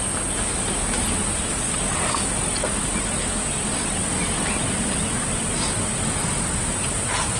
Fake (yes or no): no